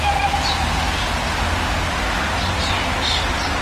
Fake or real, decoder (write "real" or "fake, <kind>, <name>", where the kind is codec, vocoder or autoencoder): real